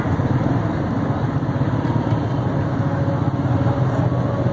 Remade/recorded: recorded